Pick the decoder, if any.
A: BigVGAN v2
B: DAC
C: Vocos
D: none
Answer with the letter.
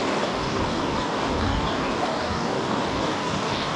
B